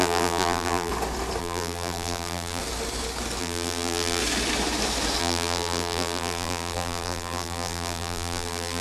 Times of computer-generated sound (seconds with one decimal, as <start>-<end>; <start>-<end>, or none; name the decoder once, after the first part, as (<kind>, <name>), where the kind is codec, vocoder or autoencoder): 0.0-0.9 (vocoder, BigVGAN v2); 1.4-2.6; 3.4-4.2; 5.2-8.8